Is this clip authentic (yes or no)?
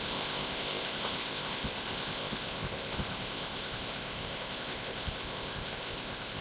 no